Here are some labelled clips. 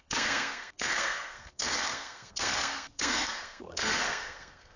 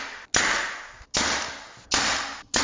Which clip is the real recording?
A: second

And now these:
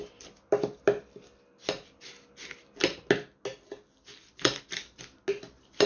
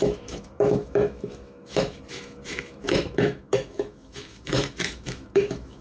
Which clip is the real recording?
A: first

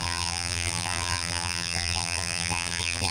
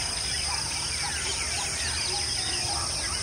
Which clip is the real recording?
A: second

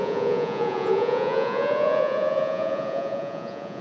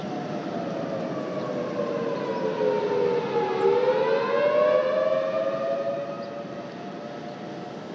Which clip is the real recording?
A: second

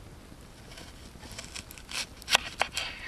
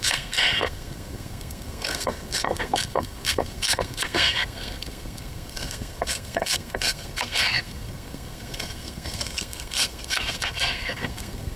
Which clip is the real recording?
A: first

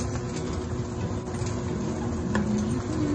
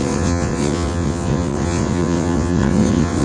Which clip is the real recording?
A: first